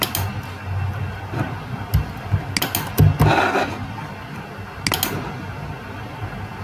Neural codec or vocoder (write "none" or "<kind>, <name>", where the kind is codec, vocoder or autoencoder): none